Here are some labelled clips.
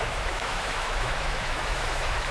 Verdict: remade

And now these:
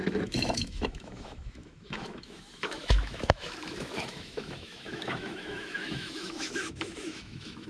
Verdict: remade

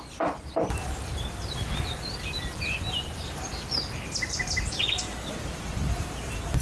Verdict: remade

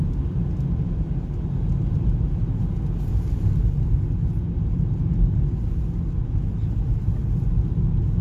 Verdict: recorded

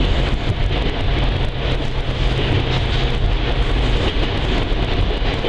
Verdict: recorded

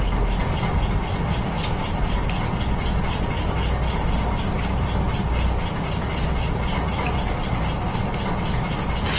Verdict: recorded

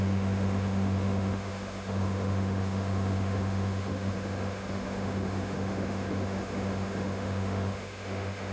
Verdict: remade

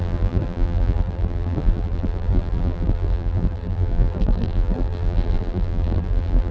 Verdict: remade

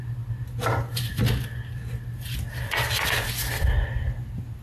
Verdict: recorded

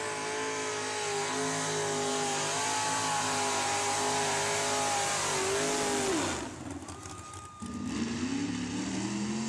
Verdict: recorded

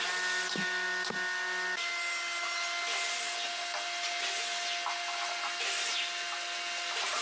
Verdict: recorded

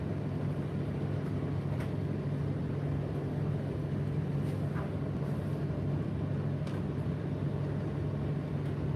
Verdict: recorded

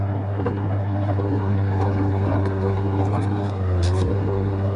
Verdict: remade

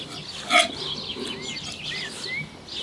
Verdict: recorded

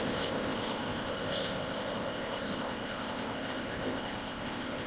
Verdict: remade